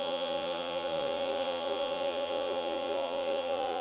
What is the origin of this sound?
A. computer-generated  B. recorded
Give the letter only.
A